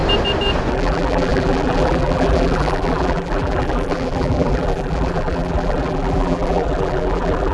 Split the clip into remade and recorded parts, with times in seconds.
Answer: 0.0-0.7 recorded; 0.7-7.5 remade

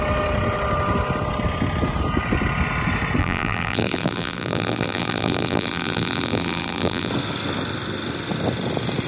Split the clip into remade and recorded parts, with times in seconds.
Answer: 0.0-3.2 recorded; 3.2-7.1 remade; 7.1-9.1 recorded

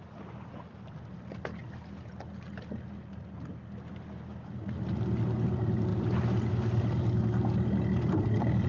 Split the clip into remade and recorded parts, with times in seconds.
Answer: 0.0-8.7 recorded

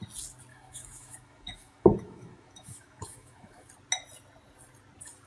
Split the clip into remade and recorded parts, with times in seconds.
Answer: 0.0-0.5 recorded; 0.5-3.7 remade; 3.7-5.3 recorded

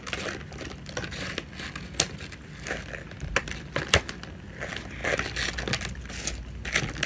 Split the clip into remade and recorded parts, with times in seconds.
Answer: 0.0-7.1 recorded